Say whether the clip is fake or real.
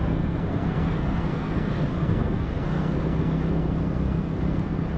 fake